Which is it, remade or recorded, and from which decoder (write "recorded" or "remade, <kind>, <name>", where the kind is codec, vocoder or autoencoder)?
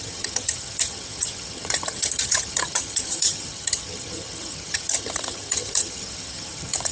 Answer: remade, vocoder, HiFi-GAN